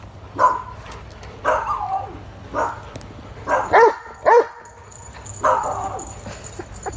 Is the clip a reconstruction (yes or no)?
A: no